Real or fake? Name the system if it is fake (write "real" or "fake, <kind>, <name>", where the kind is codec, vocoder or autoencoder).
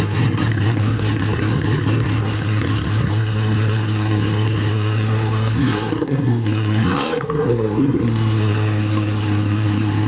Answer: fake, codec, SNAC